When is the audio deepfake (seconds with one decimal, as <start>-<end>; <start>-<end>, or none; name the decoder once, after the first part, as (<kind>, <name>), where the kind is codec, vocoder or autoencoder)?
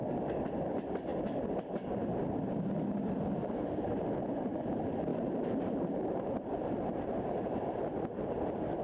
5.1-7.8 (vocoder, BigVGAN v2)